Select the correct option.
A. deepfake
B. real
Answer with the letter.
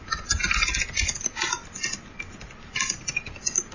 B